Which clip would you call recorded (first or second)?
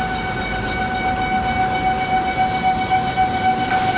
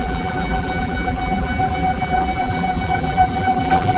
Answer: first